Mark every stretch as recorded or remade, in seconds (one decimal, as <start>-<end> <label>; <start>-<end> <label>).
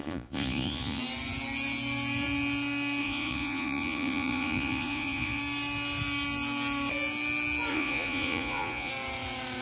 0.0-1.0 remade; 1.0-3.0 recorded; 3.0-5.4 remade; 5.4-7.7 recorded; 7.7-8.9 remade; 8.9-9.6 recorded